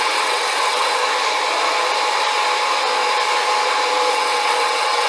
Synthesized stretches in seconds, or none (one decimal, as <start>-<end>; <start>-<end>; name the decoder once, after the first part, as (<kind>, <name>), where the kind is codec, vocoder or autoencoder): 0.0-1.0 (vocoder, WaveNeXt); 4.1-5.1